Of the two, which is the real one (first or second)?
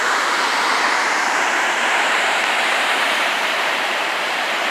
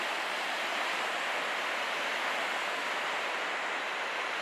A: second